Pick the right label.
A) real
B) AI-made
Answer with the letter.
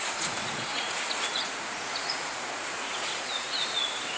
B